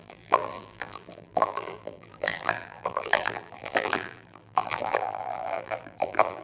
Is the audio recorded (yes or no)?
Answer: no